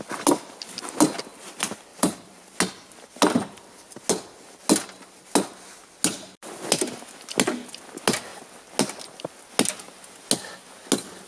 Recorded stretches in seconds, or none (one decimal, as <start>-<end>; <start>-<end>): 0.0-1.9; 2.5-11.3